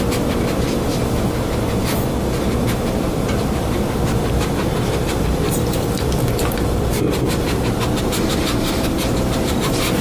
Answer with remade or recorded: remade